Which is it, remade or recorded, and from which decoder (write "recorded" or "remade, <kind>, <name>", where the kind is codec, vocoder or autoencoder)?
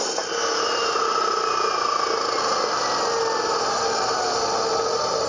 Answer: recorded